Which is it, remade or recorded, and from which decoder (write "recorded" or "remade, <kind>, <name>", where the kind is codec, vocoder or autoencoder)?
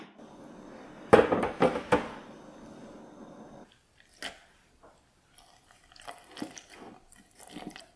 recorded